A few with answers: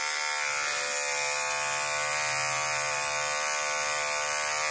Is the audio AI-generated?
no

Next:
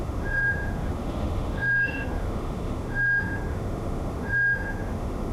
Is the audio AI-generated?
yes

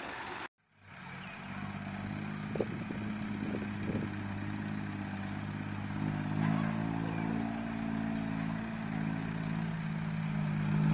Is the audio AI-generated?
no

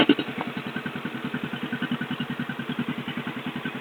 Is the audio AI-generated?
no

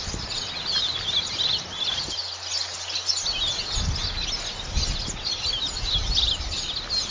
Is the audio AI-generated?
no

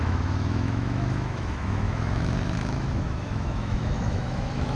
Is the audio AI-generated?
yes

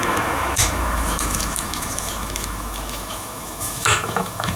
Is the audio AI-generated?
yes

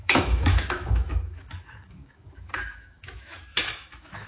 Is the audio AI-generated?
yes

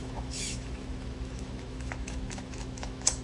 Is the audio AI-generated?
yes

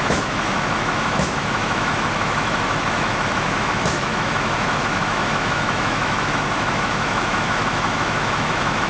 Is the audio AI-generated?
yes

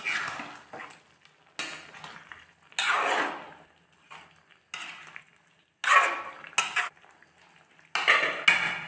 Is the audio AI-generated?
no